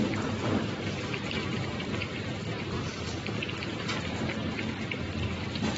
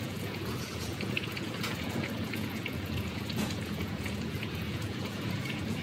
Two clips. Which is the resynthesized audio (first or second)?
second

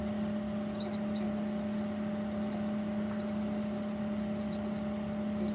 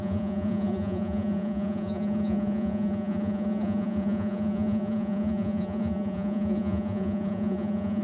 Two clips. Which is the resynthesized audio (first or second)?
second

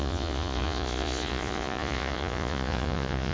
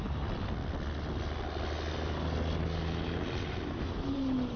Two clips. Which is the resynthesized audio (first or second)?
first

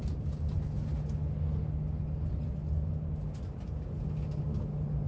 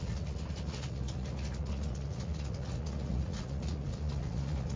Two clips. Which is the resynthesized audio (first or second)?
second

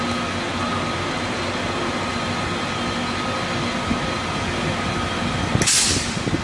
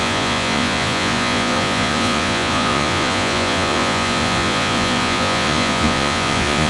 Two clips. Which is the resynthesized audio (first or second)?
second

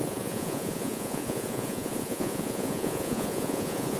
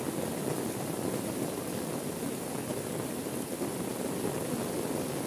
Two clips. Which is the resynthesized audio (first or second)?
first